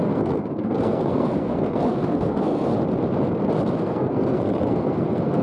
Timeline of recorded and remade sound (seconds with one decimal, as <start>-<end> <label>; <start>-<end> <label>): 0.0-2.7 remade; 2.7-3.8 recorded; 3.8-5.4 remade

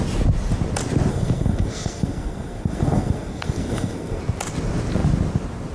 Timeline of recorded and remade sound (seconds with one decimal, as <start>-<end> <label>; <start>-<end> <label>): 0.0-1.1 recorded; 1.1-4.2 remade; 4.2-5.7 recorded

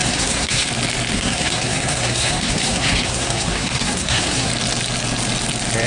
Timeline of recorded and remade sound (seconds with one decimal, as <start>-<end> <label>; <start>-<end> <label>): 0.0-0.7 remade; 0.7-1.1 recorded; 1.1-4.5 remade; 4.5-5.9 recorded

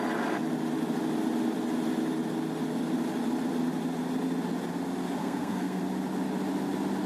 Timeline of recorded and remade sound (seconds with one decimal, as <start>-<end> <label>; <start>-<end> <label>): 0.0-5.2 recorded; 5.2-5.8 remade; 5.8-7.1 recorded

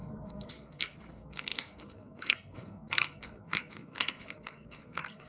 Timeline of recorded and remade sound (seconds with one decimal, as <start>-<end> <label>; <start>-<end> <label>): 0.0-5.3 remade